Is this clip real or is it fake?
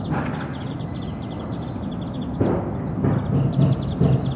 real